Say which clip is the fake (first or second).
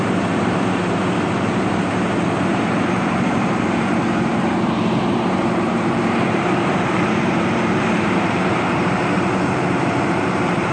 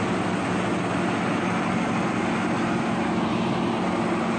first